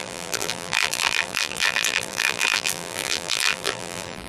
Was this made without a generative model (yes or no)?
no